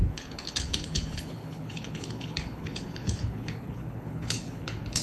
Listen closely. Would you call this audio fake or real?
fake